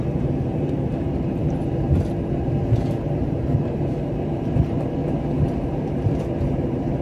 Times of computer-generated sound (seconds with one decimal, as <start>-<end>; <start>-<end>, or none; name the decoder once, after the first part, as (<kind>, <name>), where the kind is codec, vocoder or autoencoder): 0.0-5.0 (vocoder, BigVGAN v2); 5.5-7.0